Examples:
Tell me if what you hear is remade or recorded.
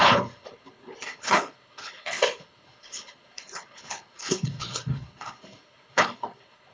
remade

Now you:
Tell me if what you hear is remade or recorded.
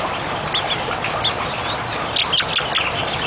recorded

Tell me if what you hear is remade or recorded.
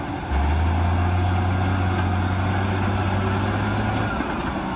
recorded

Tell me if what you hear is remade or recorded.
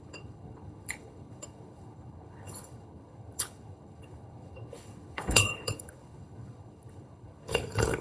remade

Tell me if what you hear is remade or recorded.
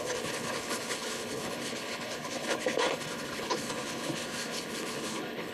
remade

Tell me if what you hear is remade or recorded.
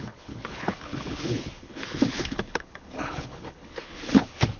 remade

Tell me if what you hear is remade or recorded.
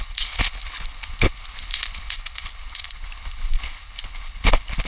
remade